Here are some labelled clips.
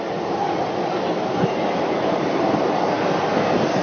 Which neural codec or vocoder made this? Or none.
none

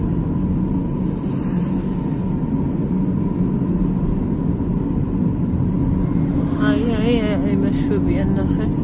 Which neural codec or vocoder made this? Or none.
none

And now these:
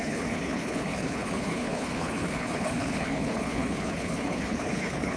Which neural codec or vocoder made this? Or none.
codec, HILCodec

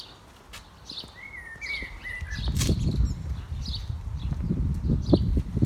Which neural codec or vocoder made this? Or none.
none